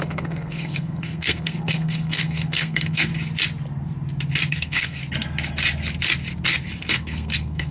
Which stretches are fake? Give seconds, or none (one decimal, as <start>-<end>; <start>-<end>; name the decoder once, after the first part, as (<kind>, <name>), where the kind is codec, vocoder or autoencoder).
0.0-3.1 (codec, SNAC); 4.5-5.0; 6.9-7.7